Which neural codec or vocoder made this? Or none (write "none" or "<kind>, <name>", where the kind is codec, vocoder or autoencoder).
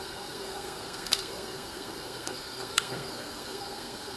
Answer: codec, SNAC